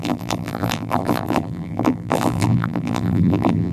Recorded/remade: remade